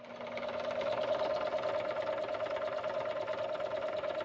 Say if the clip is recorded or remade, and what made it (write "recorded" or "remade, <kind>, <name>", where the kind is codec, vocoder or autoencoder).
recorded